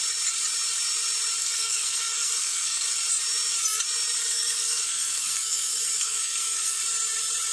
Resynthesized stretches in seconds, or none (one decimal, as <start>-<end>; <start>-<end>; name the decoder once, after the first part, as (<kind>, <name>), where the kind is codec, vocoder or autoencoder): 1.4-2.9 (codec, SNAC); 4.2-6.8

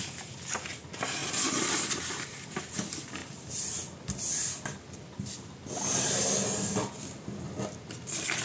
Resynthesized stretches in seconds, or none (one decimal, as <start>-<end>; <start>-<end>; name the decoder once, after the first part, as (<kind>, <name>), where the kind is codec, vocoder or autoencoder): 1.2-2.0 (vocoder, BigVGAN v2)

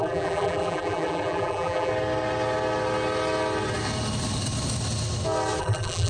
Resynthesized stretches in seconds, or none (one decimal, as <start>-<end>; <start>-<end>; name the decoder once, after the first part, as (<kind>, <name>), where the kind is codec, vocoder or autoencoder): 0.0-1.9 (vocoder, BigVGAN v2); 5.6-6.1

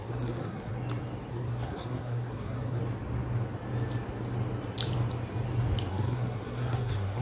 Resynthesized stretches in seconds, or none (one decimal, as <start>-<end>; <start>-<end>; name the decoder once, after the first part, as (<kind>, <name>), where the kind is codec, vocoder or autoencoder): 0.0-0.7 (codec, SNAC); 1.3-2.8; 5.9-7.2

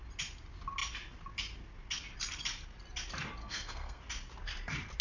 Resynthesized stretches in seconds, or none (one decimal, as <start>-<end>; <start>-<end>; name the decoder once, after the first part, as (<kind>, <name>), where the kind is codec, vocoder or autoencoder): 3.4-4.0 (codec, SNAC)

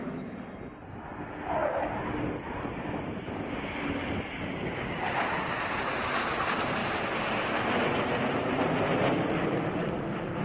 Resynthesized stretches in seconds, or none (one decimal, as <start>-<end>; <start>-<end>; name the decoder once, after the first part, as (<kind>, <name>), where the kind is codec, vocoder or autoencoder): none